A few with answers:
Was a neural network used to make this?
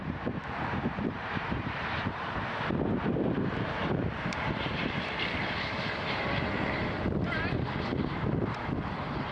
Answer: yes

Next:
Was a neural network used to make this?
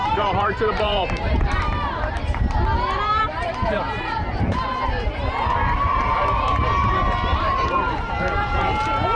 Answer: yes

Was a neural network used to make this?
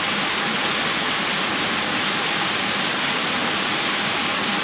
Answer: no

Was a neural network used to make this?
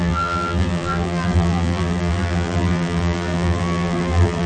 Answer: yes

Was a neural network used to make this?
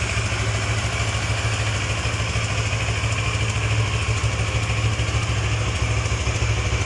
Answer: no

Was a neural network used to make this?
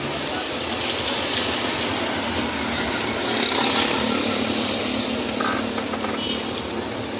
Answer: no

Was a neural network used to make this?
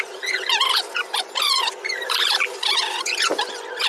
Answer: yes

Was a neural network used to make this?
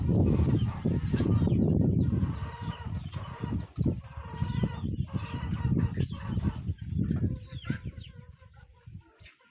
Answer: no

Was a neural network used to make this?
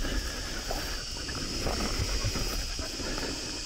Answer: no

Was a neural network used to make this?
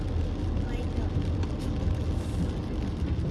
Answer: no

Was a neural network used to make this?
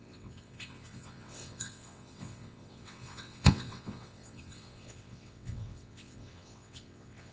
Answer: yes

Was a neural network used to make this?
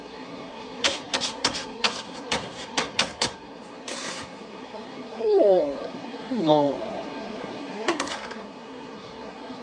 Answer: yes